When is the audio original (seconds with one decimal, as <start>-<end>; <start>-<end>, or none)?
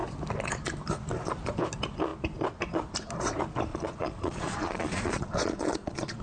0.0-3.7